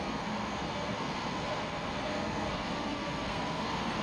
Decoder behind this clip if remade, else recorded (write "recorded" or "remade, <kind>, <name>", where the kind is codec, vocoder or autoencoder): remade, codec, SNAC